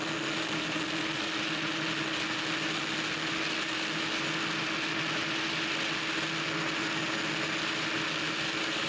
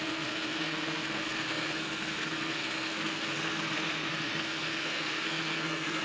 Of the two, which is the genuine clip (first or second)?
first